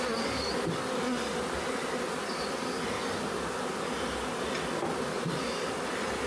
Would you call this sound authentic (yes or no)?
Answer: yes